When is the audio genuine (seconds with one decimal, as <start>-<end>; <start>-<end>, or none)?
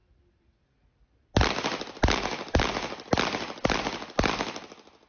0.0-5.1